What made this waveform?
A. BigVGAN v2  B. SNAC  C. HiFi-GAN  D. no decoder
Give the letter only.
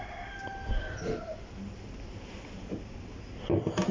D